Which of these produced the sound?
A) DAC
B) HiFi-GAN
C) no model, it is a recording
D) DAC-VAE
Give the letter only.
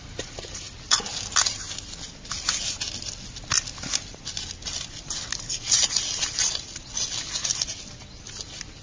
C